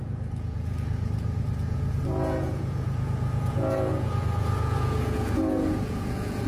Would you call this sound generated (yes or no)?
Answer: yes